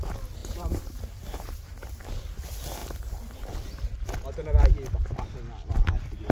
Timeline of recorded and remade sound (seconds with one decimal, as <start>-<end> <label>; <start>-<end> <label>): 0.0-0.4 recorded; 0.4-2.1 remade; 2.1-6.3 recorded